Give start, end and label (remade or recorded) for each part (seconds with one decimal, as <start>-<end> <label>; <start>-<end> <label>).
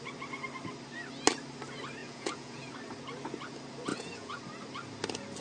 0.0-2.0 recorded; 2.0-2.7 remade; 2.7-3.9 recorded; 3.9-4.4 remade; 4.4-5.4 recorded